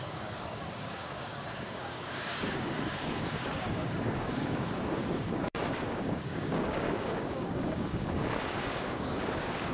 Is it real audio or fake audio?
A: fake